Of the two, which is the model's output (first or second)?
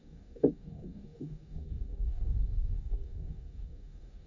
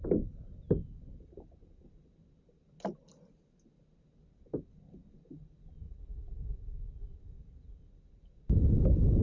first